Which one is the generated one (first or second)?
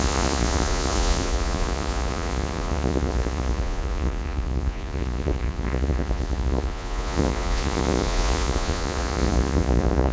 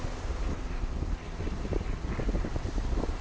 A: first